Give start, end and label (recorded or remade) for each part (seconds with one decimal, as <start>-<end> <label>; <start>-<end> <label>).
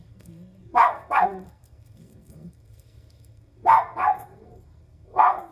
0.0-5.5 remade